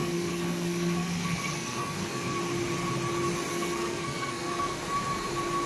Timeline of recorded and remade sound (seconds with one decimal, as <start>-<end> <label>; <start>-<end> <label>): 0.0-2.4 remade; 2.4-3.5 recorded; 3.5-4.8 remade; 4.8-5.7 recorded